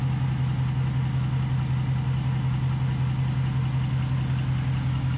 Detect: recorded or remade recorded